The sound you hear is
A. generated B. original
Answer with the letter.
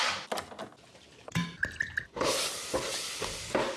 B